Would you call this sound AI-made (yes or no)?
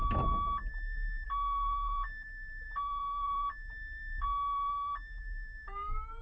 yes